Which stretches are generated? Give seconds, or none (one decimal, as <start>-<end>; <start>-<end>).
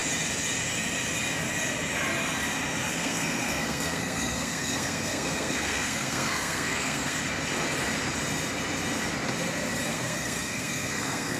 2.9-7.2; 9.9-11.4